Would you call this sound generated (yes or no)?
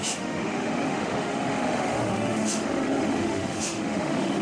yes